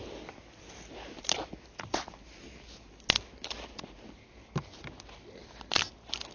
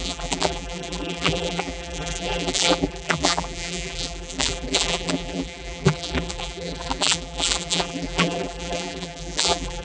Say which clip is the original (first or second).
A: first